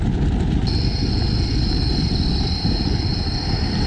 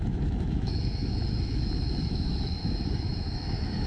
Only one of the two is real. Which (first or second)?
first